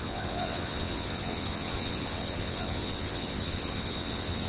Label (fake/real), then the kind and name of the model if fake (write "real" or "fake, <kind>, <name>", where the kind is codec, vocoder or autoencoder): fake, vocoder, WaveNeXt